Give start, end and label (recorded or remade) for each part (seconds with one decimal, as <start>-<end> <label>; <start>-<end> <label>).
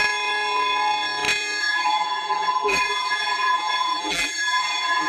0.0-1.6 recorded; 1.6-5.1 remade